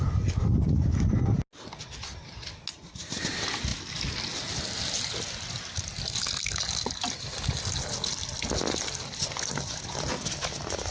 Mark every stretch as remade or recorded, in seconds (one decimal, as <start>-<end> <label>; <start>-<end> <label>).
0.0-2.7 recorded; 2.7-3.2 remade; 3.2-10.9 recorded